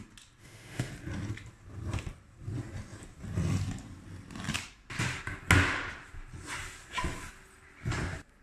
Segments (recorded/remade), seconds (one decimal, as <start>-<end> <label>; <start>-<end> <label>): 0.0-0.4 recorded; 0.4-0.9 remade; 0.9-8.4 recorded